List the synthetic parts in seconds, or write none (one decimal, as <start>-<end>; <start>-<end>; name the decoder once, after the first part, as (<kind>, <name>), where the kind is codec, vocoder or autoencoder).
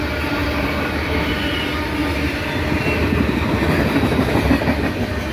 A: none